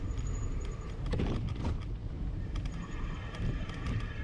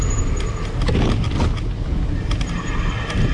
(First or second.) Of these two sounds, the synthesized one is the first